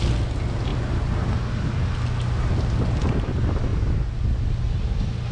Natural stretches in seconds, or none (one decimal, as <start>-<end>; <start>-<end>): 0.0-5.3